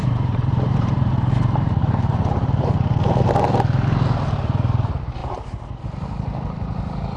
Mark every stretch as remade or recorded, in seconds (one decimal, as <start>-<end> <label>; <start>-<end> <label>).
0.0-1.1 remade; 1.1-1.8 recorded; 1.8-2.5 remade; 2.5-5.2 recorded; 5.2-5.8 remade; 5.8-7.2 recorded